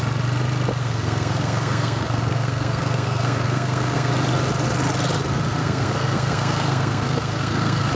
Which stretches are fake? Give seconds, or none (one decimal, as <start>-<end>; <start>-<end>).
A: 0.8-4.1; 5.6-7.9